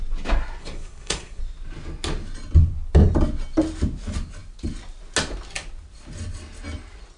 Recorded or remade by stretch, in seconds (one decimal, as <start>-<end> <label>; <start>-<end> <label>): 0.0-0.6 recorded; 0.6-1.4 remade; 1.4-7.2 recorded